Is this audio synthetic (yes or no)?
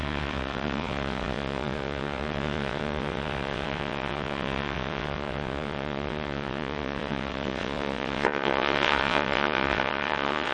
yes